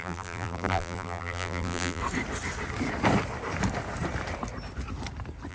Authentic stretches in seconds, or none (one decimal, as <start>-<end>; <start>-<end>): 2.0-5.5